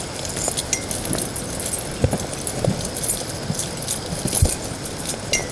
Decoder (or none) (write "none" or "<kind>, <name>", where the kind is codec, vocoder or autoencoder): none